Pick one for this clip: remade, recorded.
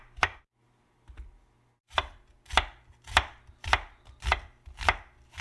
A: recorded